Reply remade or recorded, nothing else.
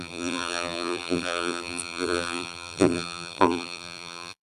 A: remade